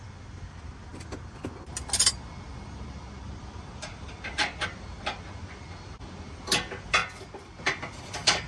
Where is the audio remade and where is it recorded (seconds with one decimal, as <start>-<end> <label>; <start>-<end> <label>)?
0.0-0.9 remade; 0.9-3.4 recorded; 3.4-7.0 remade; 7.0-7.6 recorded; 7.6-8.5 remade